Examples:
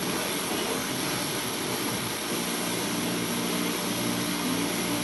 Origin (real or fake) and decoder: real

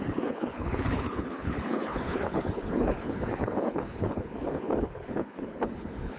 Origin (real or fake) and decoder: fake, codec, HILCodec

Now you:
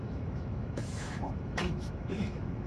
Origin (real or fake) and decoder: fake, autoencoder, DAC-VAE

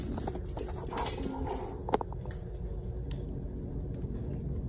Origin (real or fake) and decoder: real